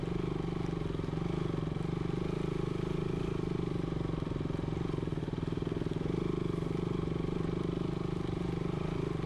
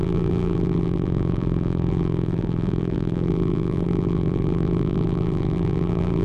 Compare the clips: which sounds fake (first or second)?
second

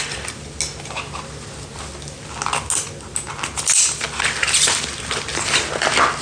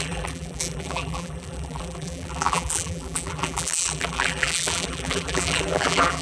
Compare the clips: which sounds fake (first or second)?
second